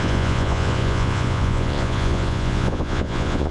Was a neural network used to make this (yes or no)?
yes